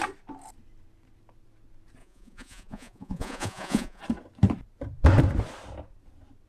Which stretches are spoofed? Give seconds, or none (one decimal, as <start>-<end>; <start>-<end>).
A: 2.0-4.0